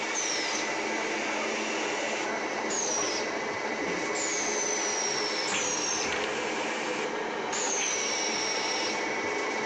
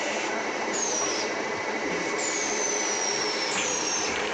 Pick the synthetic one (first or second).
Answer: second